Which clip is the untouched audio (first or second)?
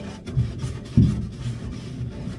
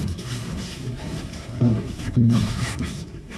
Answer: first